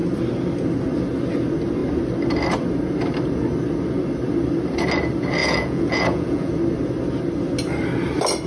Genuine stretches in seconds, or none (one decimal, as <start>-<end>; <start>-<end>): 0.0-5.4; 6.5-8.5